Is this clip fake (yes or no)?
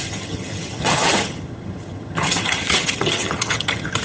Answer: yes